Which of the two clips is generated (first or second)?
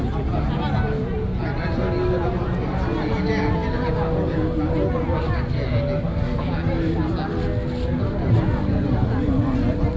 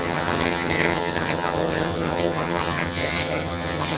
second